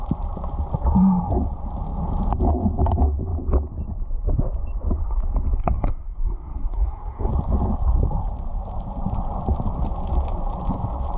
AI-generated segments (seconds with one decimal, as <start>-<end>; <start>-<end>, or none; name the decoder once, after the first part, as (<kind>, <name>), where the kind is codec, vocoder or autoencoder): 5.6-7.3 (codec, SNAC)